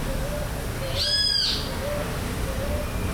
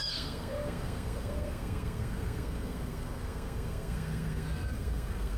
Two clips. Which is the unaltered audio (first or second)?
first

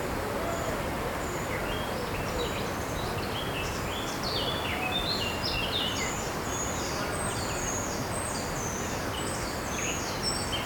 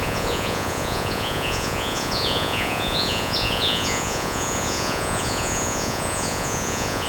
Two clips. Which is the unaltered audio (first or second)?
first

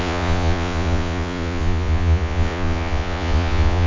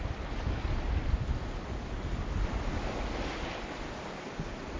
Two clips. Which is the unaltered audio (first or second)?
second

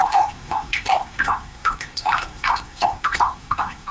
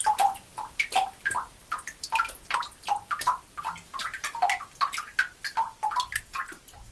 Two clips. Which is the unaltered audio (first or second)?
second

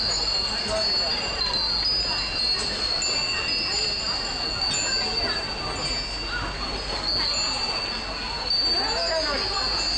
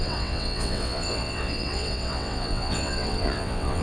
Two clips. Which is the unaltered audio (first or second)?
first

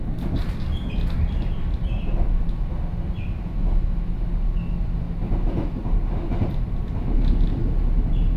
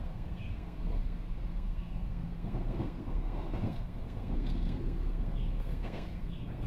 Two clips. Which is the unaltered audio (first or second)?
first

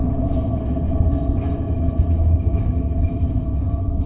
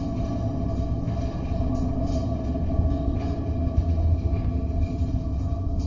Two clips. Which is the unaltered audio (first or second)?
second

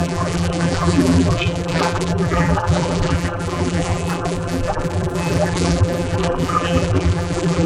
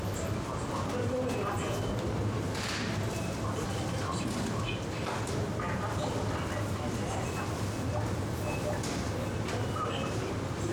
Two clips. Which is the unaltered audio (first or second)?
second